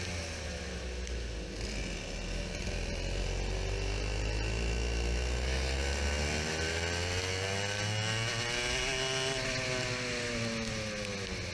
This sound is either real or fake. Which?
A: real